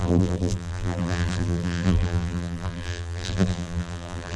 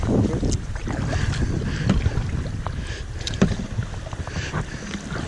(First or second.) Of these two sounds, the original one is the second